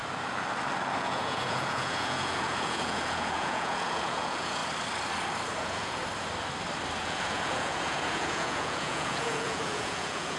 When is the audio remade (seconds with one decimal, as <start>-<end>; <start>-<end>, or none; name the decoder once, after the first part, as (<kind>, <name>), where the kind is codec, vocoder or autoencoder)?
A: 1.0-4.6 (vocoder, Vocos); 5.6-6.0; 7.0-10.4